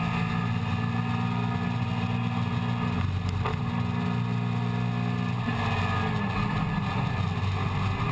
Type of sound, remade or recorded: recorded